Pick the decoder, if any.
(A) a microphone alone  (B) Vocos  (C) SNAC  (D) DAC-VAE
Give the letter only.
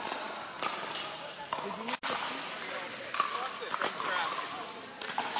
A